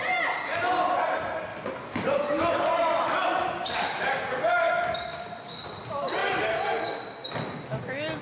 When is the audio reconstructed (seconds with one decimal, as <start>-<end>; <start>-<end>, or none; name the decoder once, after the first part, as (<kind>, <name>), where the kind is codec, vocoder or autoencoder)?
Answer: 1.5-4.7 (vocoder, BigVGAN v2)